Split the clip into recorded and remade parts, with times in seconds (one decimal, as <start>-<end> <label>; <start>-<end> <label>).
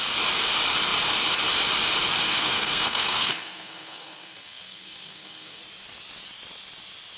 0.0-2.3 recorded; 2.3-5.6 remade; 5.6-7.2 recorded